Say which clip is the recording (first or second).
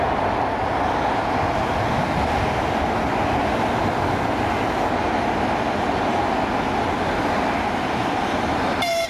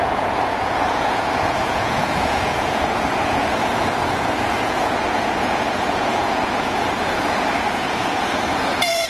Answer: first